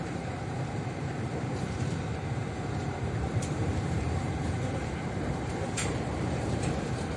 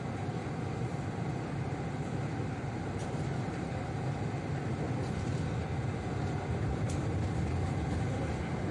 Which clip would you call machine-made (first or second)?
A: first